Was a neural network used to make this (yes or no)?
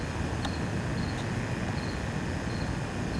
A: no